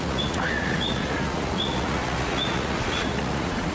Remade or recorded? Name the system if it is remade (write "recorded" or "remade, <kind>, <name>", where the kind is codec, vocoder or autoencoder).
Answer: remade, vocoder, Vocos